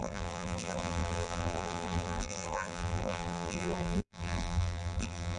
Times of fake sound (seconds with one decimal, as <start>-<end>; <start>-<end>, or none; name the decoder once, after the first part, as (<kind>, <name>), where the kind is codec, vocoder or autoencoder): 0.0-5.4 (vocoder, BigVGAN v2)